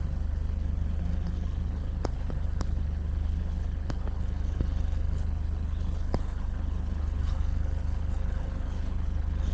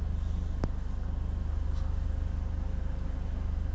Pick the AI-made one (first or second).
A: first